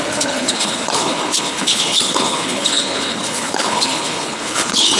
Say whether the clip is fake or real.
fake